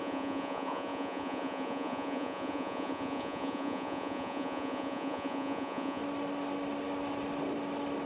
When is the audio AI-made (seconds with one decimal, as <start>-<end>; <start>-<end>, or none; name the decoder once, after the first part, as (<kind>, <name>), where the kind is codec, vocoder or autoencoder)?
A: 0.0-6.0 (vocoder, Vocos)